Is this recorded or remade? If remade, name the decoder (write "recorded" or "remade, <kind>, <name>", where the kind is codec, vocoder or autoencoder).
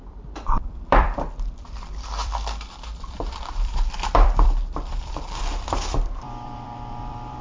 remade, vocoder, BigVGAN v2